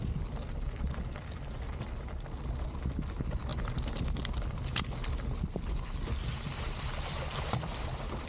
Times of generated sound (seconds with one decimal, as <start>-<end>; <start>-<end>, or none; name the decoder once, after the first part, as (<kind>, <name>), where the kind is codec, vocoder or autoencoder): none